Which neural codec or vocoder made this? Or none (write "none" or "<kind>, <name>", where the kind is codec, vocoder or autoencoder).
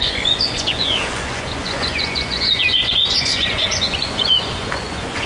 vocoder, Vocos